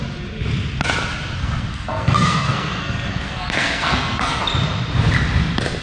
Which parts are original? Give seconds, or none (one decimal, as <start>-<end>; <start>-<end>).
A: 0.0-1.4; 4.4-5.8